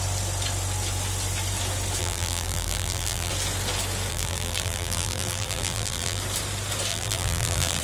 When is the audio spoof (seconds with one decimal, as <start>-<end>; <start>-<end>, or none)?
2.0-3.3; 4.1-6.2; 6.9-7.8